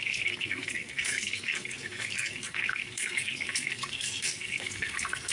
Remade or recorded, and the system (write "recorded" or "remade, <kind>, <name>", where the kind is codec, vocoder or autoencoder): remade, codec, SNAC